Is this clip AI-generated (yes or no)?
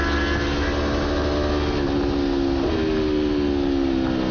no